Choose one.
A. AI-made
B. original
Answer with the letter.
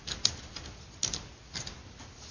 B